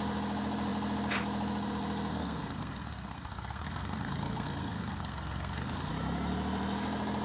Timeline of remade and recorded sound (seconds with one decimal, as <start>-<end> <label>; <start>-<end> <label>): 0.0-2.1 recorded; 2.1-5.9 remade; 5.9-7.2 recorded